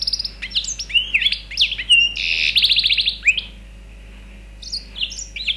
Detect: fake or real real